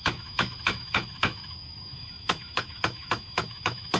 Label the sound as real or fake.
fake